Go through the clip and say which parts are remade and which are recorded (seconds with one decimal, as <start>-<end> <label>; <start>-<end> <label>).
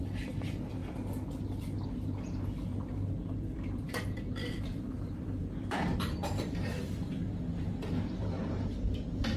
0.0-0.8 remade; 0.8-1.9 recorded; 1.9-9.4 remade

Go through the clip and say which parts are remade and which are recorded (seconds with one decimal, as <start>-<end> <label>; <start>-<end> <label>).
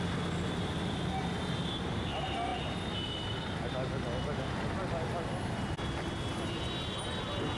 0.0-7.6 recorded